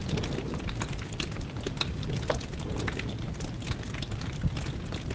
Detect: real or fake real